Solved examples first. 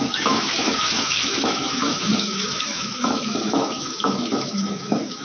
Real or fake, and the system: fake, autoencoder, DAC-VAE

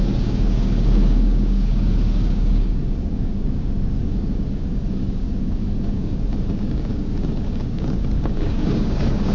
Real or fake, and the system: fake, codec, DAC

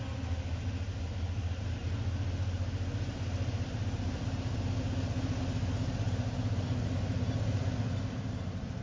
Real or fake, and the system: real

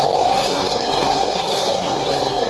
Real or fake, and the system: fake, codec, SNAC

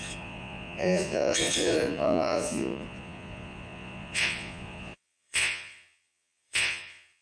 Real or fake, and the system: fake, vocoder, Vocos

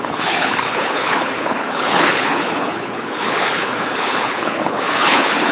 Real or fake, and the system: fake, codec, HILCodec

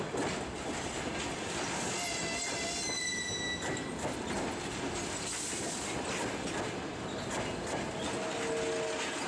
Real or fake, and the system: real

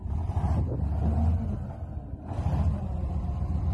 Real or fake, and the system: real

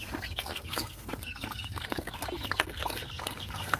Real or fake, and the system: fake, codec, SNAC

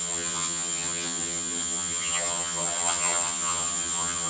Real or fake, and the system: fake, vocoder, HiFi-GAN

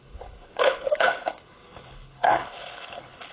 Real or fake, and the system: fake, codec, HILCodec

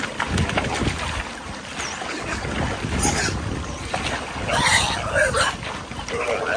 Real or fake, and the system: real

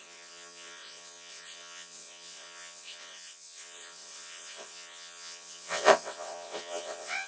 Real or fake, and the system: fake, vocoder, WaveNeXt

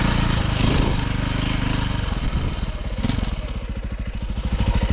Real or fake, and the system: real